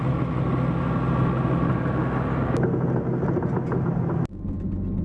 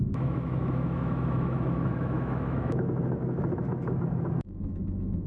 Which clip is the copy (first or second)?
second